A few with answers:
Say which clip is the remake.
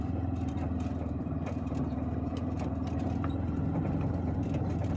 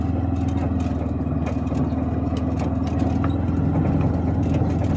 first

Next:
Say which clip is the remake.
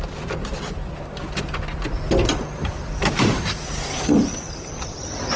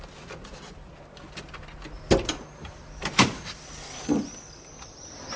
first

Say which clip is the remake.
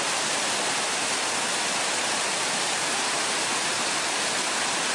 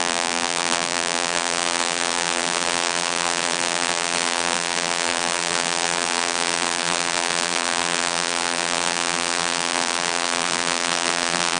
second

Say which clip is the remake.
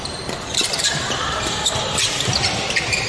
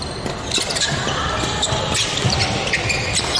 first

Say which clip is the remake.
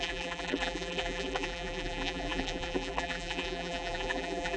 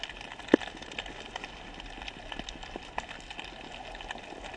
first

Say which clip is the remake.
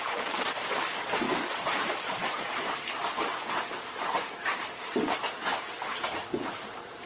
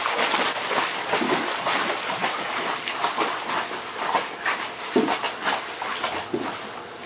first